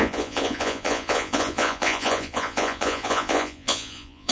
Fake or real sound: fake